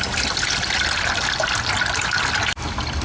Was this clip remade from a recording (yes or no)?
no